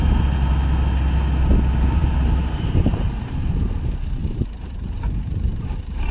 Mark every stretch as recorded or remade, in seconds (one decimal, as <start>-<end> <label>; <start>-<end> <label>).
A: 0.0-2.0 recorded; 2.0-3.6 remade; 3.6-4.2 recorded; 4.2-6.1 remade

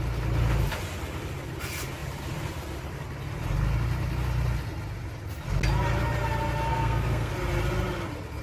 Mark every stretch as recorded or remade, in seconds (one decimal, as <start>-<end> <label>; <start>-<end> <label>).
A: 0.0-6.7 recorded; 6.7-7.3 remade; 7.3-8.4 recorded

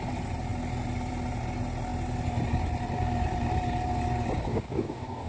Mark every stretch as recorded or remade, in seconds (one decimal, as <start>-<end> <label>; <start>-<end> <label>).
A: 0.0-4.5 recorded; 4.5-5.3 remade